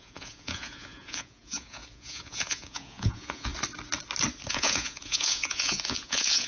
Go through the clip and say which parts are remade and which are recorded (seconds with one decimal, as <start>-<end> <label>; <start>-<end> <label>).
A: 0.0-3.5 remade; 3.5-4.5 recorded; 4.5-6.5 remade